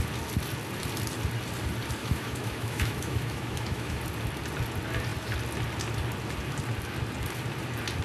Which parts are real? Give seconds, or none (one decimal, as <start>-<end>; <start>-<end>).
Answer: 0.0-2.0; 4.0-8.0

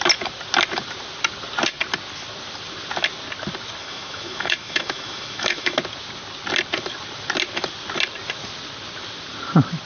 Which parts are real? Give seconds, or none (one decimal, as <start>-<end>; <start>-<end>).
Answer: 0.0-3.8; 5.8-9.9

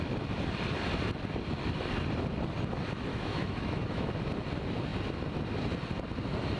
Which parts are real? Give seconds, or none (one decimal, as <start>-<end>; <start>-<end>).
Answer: 0.0-3.1; 4.1-6.6